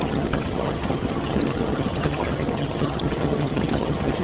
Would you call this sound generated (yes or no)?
yes